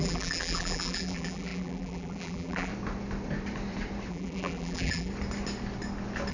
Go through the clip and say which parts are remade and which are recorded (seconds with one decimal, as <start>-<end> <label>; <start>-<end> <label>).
0.0-2.7 remade; 2.7-4.1 recorded; 4.1-5.1 remade; 5.1-6.3 recorded